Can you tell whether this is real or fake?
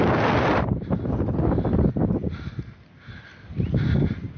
real